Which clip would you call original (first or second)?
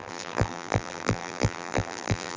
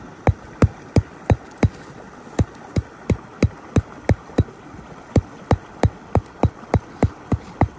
second